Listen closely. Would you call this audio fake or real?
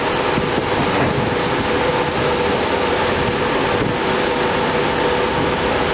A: real